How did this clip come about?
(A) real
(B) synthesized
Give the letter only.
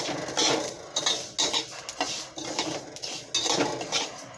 A